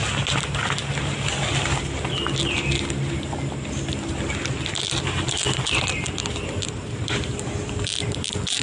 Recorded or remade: recorded